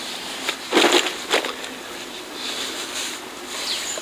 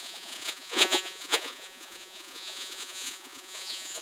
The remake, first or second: second